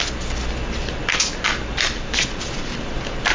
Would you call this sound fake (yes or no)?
no